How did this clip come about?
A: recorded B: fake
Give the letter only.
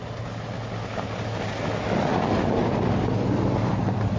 A